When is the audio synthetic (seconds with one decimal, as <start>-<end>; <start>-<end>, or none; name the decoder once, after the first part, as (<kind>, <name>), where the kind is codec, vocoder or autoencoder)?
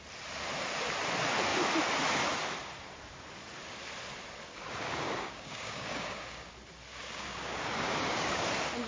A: 4.5-6.5 (codec, DAC); 7.0-8.5